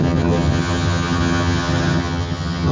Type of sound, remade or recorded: remade